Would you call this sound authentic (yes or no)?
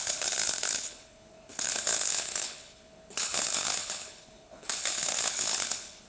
no